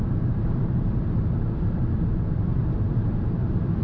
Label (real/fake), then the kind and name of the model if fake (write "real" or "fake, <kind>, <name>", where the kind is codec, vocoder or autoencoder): fake, vocoder, BigVGAN v2